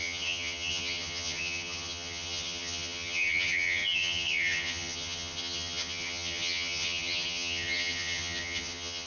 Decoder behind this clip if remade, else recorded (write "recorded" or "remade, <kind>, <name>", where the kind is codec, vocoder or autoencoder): remade, vocoder, HiFi-GAN